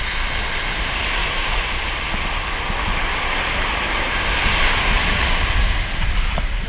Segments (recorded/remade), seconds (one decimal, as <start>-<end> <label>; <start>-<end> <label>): 0.0-1.2 recorded; 1.2-5.2 remade; 5.2-6.7 recorded